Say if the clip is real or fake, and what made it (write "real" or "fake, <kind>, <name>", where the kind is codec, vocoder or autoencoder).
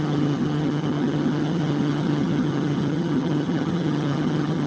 fake, vocoder, HiFi-GAN